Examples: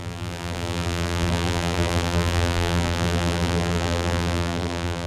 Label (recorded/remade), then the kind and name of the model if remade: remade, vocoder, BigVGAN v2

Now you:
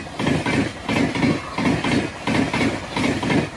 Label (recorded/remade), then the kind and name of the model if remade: recorded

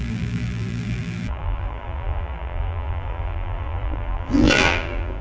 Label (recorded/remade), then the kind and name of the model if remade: remade, vocoder, BigVGAN v2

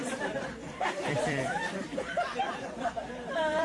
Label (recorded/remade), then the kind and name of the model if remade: remade, vocoder, BigVGAN v2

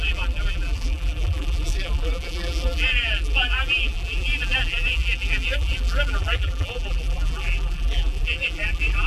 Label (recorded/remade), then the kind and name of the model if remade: remade, vocoder, BigVGAN v2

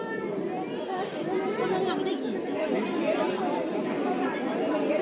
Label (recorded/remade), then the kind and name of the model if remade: remade, vocoder, BigVGAN v2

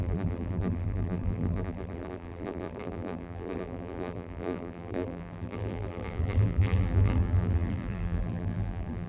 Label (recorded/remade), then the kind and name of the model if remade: remade, vocoder, BigVGAN v2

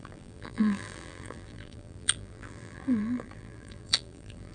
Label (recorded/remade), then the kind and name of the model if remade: remade, vocoder, BigVGAN v2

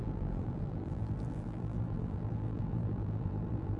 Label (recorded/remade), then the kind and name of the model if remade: remade, vocoder, BigVGAN v2